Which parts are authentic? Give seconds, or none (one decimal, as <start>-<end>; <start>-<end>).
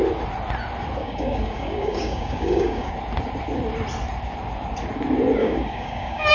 0.0-1.0; 2.9-5.4